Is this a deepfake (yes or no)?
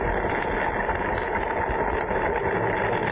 no